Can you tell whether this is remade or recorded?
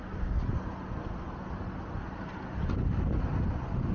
recorded